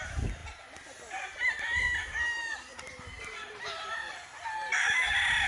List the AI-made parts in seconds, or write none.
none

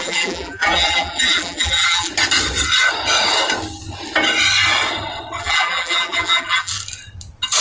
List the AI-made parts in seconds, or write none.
0.0-2.1 (vocoder, BigVGAN v2); 5.4-6.7

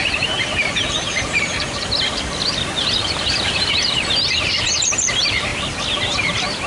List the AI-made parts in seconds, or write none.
0.0-6.7 (vocoder, BigVGAN v2)

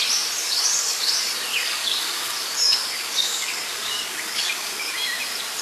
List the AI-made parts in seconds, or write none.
0.4-1.1 (codec, DAC); 1.5-4.9

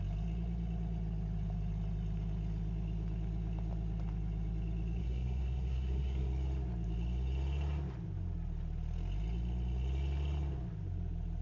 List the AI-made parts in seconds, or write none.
5.0-6.3 (codec, SNAC)

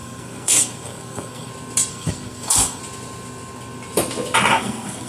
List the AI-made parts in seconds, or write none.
0.0-1.5 (codec, SNAC); 1.9-2.8; 4.5-5.1

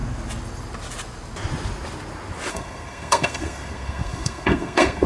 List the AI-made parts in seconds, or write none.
2.5-5.1 (codec, SNAC)